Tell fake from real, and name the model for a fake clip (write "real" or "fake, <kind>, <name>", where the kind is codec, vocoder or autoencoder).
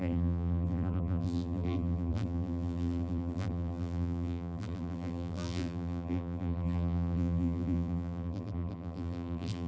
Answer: fake, vocoder, BigVGAN v2